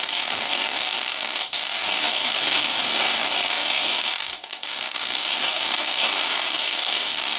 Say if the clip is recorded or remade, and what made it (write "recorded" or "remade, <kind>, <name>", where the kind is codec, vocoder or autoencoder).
remade, codec, DAC